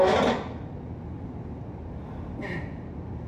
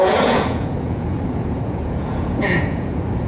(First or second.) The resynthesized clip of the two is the second